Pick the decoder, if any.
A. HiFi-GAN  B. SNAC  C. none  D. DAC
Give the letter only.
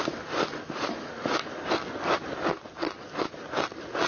C